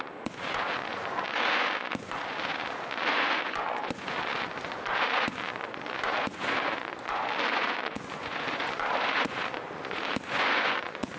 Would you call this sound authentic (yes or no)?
no